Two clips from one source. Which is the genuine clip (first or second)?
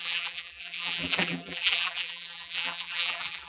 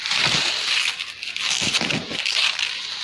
second